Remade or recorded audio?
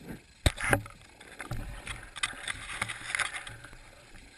recorded